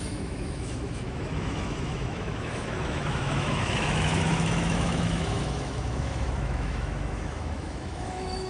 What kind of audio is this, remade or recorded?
remade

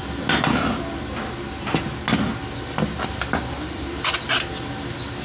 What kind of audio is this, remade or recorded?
recorded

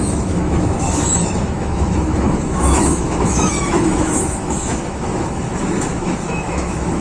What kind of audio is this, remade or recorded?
remade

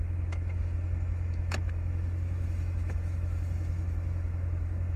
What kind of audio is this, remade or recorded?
remade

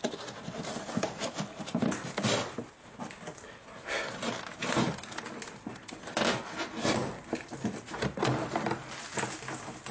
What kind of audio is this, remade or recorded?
recorded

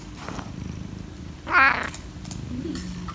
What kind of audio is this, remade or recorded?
recorded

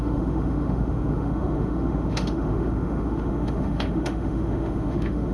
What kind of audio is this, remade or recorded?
remade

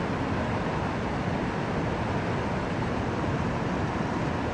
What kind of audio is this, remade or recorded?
recorded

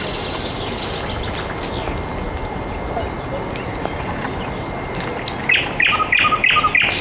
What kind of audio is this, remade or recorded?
recorded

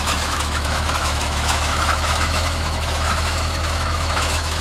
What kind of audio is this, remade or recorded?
remade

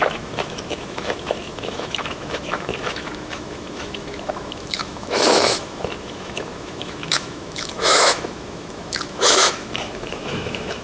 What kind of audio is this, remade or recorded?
remade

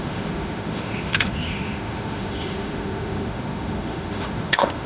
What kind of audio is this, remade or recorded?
remade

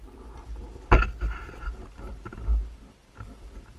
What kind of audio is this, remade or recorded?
recorded